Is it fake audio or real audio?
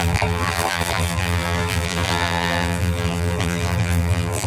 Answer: fake